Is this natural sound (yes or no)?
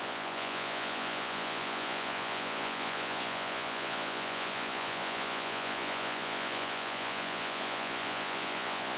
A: no